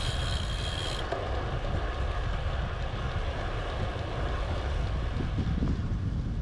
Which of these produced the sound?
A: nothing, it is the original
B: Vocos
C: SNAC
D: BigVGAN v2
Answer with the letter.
A